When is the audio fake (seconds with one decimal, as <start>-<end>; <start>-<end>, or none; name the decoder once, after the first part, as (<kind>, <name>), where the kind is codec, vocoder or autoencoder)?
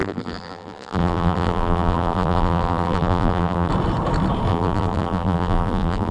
0.0-3.7 (vocoder, BigVGAN v2); 4.5-6.1